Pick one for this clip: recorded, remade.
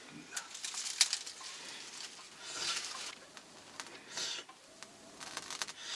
recorded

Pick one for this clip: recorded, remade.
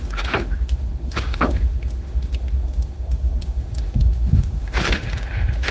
remade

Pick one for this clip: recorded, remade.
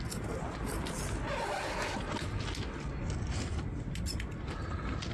recorded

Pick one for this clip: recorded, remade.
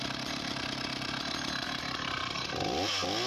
recorded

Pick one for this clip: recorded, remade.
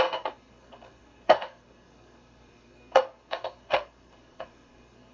remade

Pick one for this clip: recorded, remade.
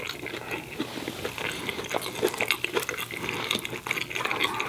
recorded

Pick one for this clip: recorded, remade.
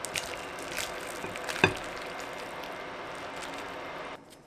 recorded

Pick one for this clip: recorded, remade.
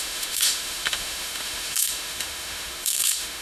remade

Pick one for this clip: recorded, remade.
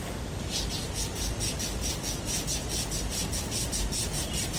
recorded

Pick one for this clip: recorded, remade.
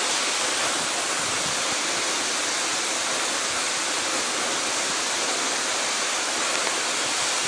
recorded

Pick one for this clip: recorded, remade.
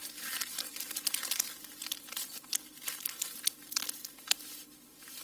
remade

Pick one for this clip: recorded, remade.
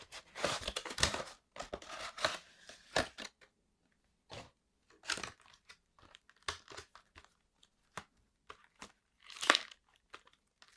recorded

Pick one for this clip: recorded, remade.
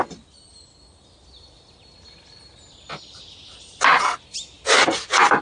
recorded